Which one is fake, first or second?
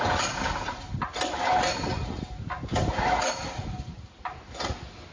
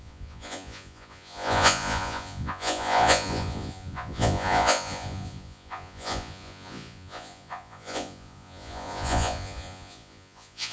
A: second